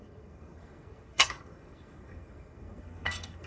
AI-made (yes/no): yes